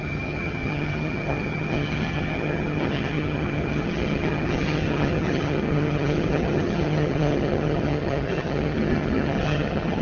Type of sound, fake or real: fake